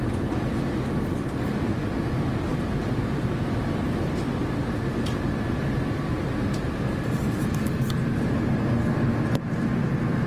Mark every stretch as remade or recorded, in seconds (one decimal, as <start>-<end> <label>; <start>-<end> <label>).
0.0-2.5 recorded; 2.5-3.5 remade; 3.5-10.3 recorded